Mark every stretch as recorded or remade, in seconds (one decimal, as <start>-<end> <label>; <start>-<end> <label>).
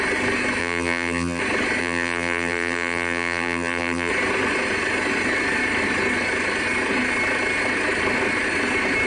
0.0-0.6 recorded; 0.6-1.4 remade; 1.4-1.8 recorded; 1.8-4.1 remade; 4.1-9.1 recorded